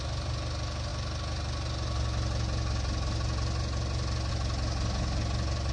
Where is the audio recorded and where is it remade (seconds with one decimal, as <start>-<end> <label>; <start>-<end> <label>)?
0.0-5.7 recorded